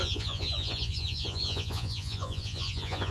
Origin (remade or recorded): remade